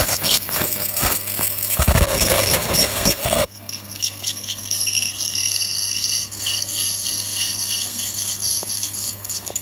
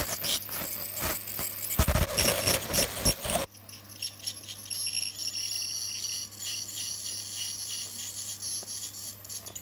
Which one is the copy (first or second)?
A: first